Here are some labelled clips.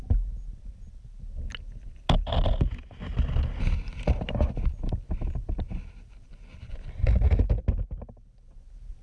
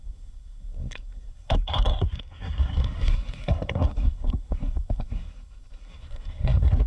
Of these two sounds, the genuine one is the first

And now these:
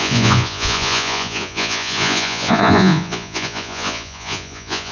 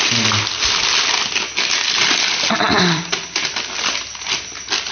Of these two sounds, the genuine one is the second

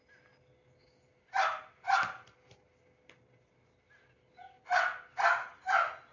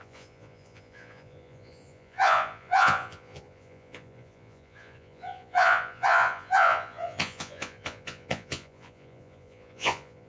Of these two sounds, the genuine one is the first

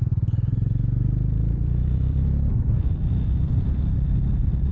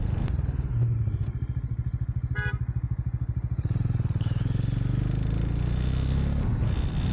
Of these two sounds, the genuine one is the second